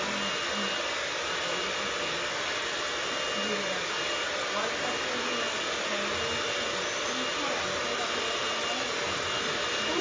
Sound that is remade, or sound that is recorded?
recorded